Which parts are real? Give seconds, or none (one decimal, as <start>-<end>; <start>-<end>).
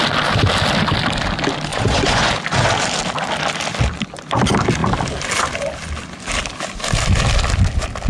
0.0-1.7; 2.3-8.1